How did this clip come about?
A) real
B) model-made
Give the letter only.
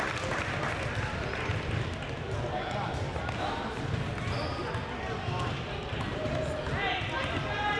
A